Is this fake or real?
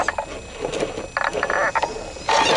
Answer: real